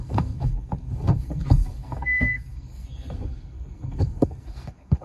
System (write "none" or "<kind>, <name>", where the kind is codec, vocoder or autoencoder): codec, SNAC